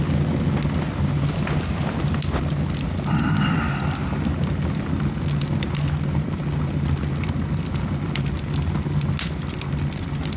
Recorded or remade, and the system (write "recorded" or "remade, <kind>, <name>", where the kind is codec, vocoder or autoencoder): recorded